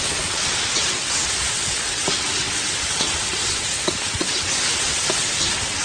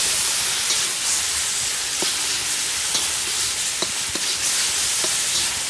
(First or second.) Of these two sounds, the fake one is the first